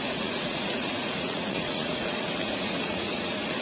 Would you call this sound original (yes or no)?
no